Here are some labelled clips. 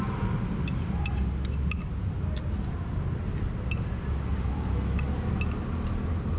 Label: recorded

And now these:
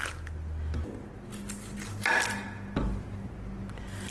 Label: recorded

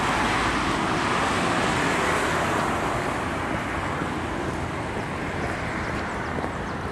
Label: recorded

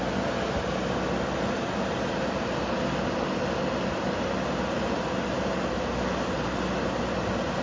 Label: recorded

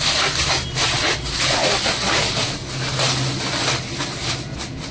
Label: recorded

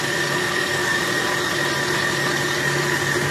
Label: recorded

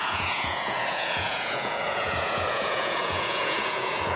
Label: remade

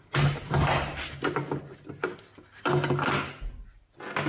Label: recorded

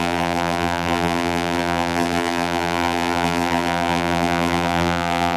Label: remade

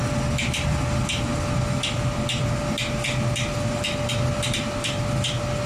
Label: recorded